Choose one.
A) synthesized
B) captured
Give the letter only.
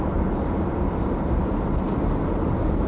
B